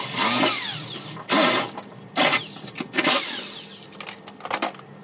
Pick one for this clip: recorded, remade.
recorded